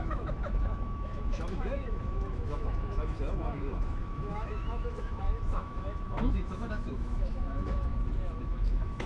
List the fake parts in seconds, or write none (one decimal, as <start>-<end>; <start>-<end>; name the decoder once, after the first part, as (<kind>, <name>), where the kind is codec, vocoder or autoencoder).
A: 0.0-7.9 (autoencoder, DAC-VAE); 8.4-9.1